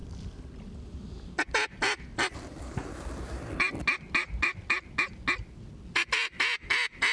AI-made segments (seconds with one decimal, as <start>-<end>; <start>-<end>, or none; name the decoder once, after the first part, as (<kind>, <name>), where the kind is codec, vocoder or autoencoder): none